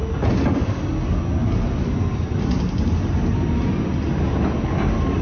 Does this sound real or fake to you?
real